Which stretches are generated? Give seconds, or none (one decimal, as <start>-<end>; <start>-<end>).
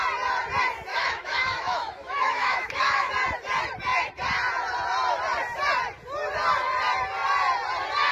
0.9-3.1